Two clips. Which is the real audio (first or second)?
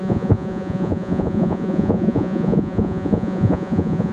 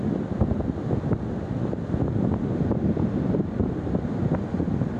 second